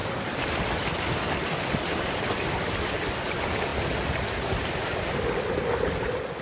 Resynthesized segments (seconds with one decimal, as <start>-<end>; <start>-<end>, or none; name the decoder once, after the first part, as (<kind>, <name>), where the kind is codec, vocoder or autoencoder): none